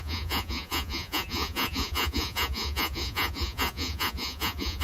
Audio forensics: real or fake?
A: fake